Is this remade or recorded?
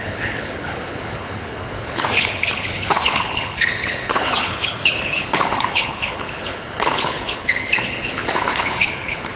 remade